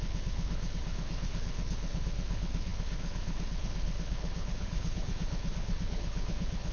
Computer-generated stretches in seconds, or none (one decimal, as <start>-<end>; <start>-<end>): 0.0-6.7